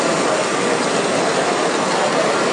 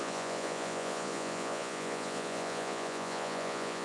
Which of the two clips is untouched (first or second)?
first